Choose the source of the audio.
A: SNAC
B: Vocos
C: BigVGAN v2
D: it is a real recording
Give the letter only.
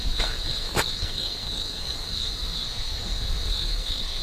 A